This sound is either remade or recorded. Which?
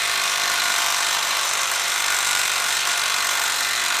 remade